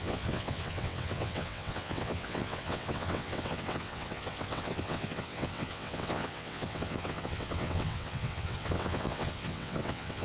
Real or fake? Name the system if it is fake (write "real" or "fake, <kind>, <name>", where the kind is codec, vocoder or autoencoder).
fake, vocoder, WaveNeXt